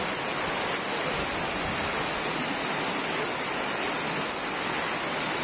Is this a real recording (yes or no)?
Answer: yes